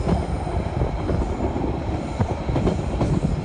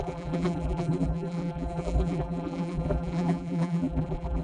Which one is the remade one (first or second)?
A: second